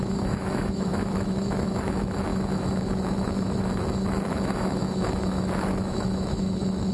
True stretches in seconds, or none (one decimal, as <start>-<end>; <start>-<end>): none